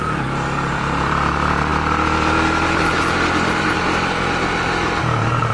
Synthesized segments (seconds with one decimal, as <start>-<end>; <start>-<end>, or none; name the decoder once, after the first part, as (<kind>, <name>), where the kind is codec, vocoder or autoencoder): 0.0-5.5 (vocoder, BigVGAN v2)